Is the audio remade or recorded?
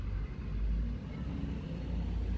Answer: recorded